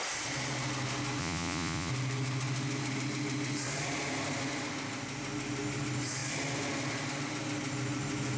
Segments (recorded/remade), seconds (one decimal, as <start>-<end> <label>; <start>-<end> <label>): 0.0-1.2 recorded; 1.2-1.9 remade; 1.9-8.4 recorded